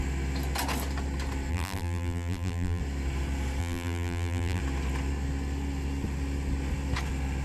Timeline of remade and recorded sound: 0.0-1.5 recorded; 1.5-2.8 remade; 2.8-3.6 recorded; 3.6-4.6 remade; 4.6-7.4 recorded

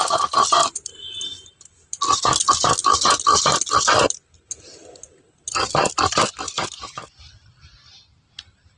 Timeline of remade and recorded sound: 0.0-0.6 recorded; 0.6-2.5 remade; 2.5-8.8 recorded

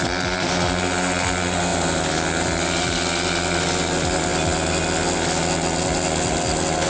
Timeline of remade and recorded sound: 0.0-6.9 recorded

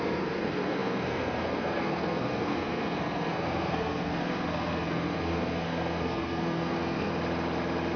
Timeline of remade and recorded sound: 0.0-7.1 remade; 7.1-8.0 recorded

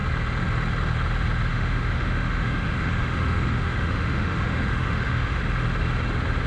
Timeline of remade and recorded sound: 0.0-1.5 recorded; 1.5-5.4 remade; 5.4-6.5 recorded